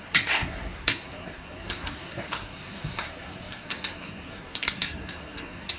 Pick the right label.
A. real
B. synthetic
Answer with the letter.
B